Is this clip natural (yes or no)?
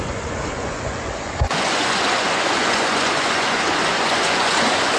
no